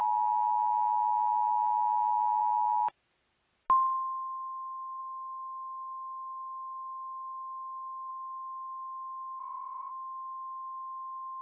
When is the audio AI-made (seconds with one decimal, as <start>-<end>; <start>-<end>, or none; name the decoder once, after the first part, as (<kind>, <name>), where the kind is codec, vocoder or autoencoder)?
9.4-9.9 (codec, HILCodec)